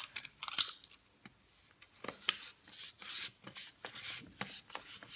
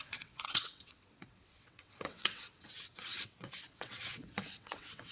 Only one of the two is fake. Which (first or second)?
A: second